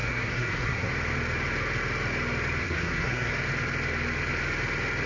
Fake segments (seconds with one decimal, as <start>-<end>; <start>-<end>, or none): 0.0-0.9; 2.6-3.3